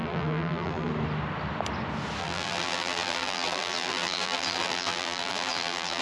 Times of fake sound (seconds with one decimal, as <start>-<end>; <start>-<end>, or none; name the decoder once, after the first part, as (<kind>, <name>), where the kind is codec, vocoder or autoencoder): 0.0-0.9 (vocoder, BigVGAN v2); 2.2-6.0